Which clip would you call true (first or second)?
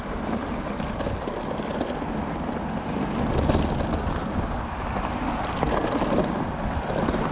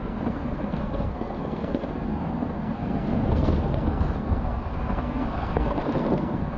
first